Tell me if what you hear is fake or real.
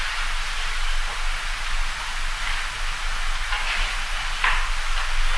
real